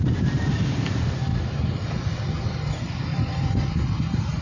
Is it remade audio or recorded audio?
remade